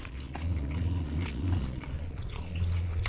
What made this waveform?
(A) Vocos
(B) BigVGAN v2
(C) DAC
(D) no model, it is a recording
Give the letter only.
A